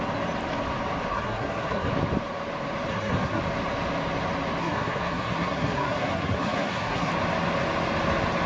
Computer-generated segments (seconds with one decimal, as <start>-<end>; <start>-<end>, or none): 1.1-1.9; 2.9-3.4; 4.6-7.1

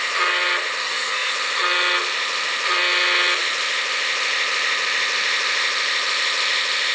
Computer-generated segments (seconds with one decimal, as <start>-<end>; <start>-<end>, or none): 0.8-1.3

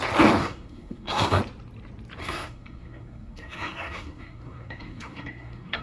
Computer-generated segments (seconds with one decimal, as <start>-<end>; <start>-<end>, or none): 0.4-1.4; 2.2-5.8